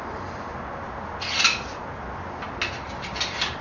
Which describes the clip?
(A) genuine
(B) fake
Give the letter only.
A